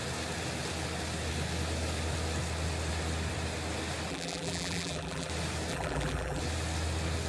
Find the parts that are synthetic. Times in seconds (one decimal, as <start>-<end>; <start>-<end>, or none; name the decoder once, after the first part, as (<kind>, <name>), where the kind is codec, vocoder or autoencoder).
4.1-5.3 (vocoder, BigVGAN v2); 5.7-6.4